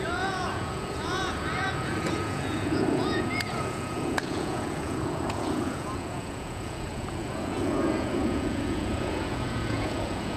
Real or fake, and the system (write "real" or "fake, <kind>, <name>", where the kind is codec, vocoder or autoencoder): fake, vocoder, Vocos